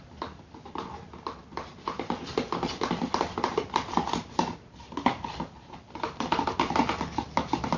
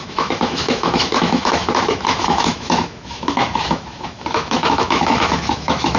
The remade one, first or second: second